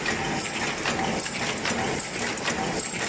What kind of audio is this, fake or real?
real